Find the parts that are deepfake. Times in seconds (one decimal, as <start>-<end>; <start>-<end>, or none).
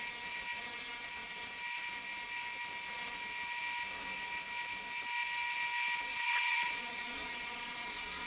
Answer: 6.1-8.3